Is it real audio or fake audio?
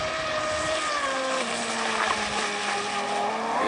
real